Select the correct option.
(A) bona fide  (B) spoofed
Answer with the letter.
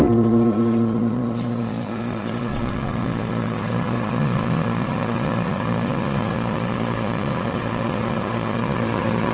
B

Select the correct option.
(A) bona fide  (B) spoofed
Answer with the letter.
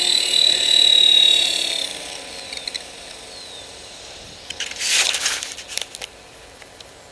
A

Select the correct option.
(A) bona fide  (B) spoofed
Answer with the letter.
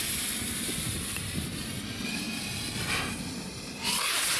A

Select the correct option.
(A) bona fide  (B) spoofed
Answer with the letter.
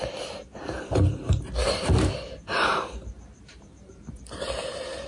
B